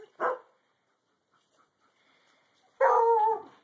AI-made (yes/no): no